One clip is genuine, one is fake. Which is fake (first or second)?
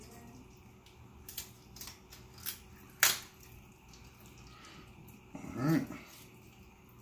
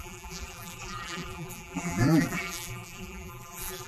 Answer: second